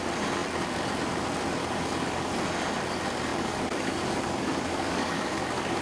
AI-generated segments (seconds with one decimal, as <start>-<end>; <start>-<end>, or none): 1.6-2.3; 3.3-5.8